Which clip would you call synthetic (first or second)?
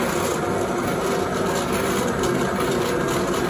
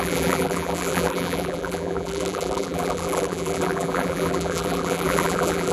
second